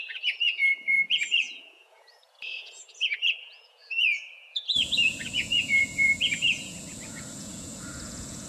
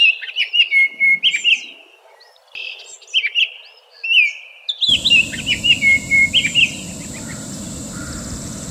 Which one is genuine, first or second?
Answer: second